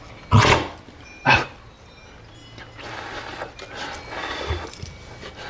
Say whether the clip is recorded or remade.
recorded